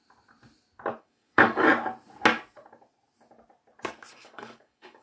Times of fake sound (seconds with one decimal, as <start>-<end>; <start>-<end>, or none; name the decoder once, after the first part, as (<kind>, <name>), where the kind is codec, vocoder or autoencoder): 1.0-1.7 (codec, DAC); 4.1-5.0